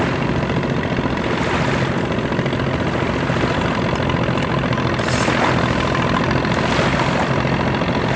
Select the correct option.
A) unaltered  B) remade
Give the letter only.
A